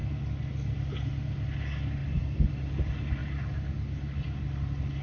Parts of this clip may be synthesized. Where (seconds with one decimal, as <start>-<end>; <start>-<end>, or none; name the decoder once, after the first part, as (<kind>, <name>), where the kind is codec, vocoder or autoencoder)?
none